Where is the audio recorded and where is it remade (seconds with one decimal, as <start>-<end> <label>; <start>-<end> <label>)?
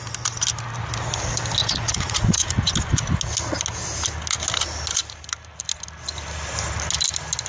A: 0.0-1.6 recorded; 1.6-2.7 remade; 2.7-7.5 recorded